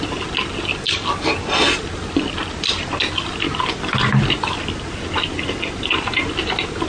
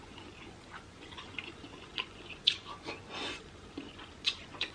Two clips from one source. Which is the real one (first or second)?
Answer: first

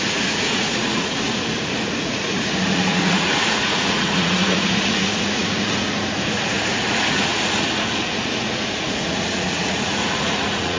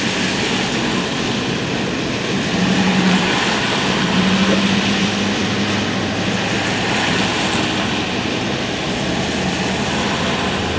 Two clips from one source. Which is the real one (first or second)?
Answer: second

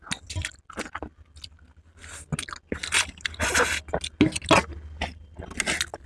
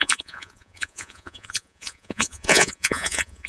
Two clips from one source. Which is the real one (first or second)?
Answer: first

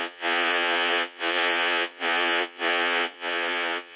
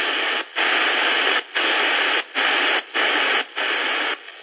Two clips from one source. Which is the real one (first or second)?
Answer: second